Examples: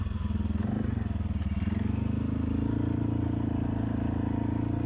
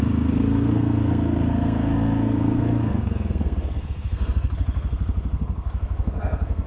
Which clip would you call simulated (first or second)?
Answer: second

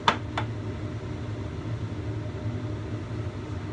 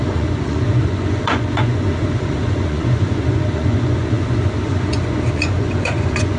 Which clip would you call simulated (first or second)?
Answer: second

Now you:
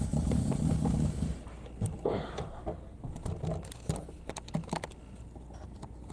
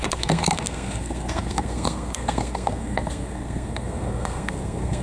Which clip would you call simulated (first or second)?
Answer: second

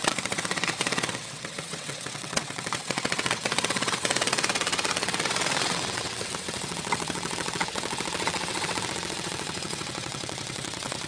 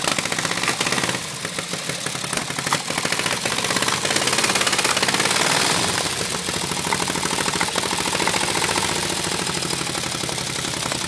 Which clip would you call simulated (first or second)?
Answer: first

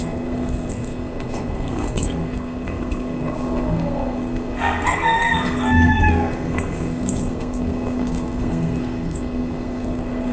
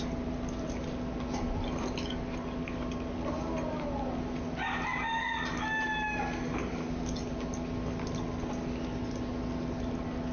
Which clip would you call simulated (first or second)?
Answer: first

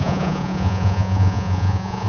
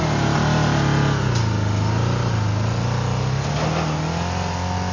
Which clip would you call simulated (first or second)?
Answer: first